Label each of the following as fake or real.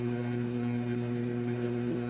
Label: fake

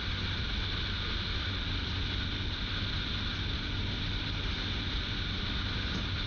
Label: real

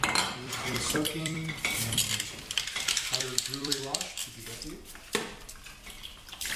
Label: fake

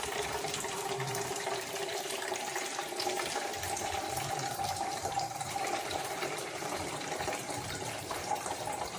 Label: fake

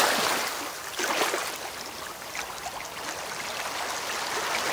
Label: real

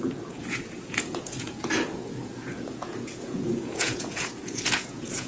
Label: fake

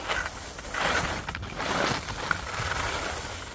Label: real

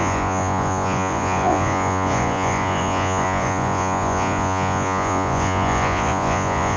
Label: fake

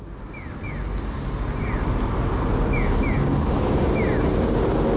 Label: real